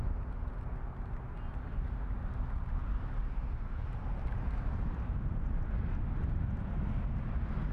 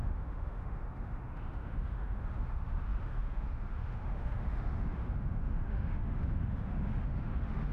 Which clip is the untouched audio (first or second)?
first